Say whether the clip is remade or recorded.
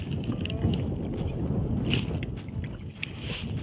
recorded